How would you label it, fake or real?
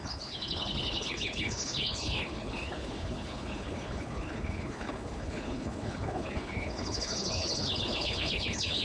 fake